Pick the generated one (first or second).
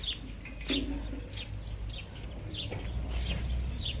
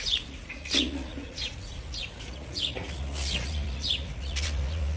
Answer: second